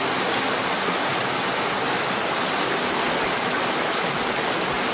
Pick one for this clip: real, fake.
real